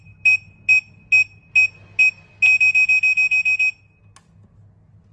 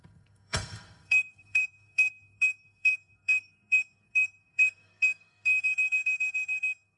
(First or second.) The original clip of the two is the first